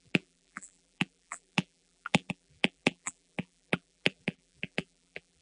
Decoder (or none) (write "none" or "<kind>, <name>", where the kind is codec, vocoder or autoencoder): vocoder, BigVGAN v2